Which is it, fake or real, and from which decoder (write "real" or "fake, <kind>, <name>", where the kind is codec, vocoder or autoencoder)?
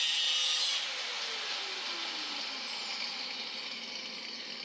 real